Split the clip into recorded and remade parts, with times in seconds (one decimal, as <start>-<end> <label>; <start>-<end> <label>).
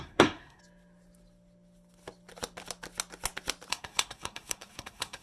0.0-0.6 remade; 0.6-3.7 recorded; 3.7-5.2 remade